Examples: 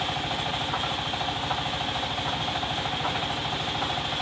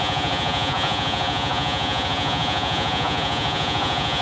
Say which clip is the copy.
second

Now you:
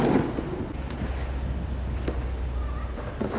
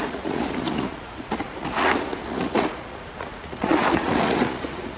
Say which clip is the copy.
second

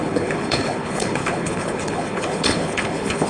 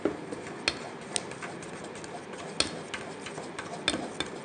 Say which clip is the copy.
first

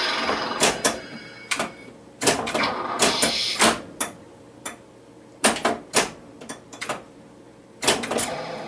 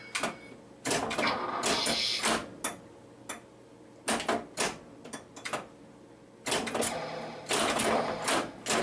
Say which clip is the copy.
first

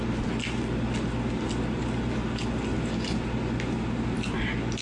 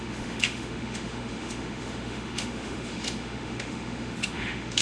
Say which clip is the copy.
second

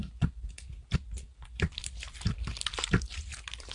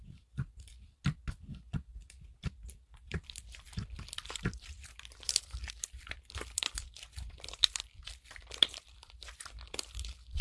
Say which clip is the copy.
second